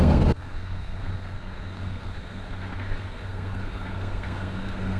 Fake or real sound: fake